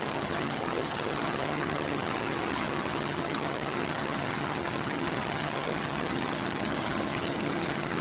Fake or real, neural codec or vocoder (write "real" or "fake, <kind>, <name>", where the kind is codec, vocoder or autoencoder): fake, vocoder, HiFi-GAN